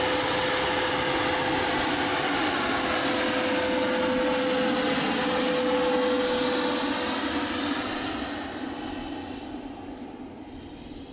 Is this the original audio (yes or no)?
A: yes